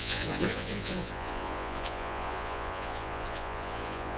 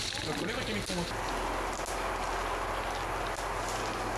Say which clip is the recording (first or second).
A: second